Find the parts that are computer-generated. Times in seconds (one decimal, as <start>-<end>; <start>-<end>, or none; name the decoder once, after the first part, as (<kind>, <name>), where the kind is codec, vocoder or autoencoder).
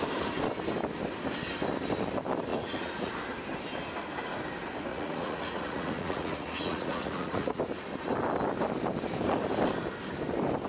2.5-3.1 (vocoder, Vocos); 4.9-7.6